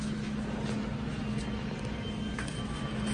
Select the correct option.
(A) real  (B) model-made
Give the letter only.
A